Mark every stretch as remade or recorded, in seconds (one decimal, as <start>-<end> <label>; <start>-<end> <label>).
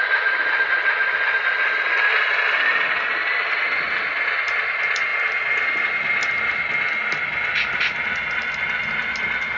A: 0.0-9.6 recorded